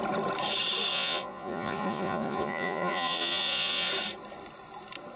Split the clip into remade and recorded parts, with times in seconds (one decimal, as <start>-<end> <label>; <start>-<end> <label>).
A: 0.0-0.9 recorded; 0.9-3.9 remade; 3.9-5.2 recorded